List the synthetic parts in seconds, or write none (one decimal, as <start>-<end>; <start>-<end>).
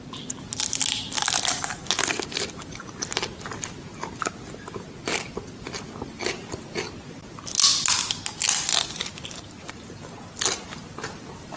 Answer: none